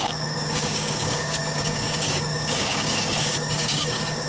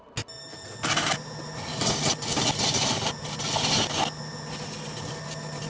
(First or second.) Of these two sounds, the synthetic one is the first